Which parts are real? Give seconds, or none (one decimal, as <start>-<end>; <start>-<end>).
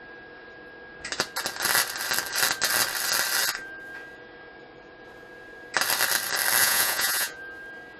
0.0-6.6; 7.4-8.0